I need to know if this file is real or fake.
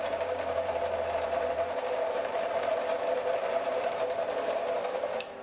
fake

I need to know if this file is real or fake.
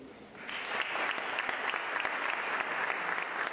real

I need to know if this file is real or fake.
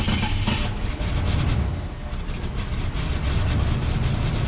real